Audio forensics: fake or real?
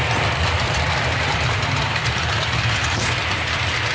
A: real